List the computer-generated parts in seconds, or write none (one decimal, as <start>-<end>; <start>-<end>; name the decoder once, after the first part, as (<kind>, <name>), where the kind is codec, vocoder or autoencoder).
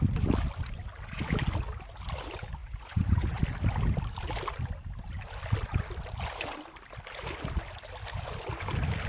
2.6-3.4 (vocoder, Vocos)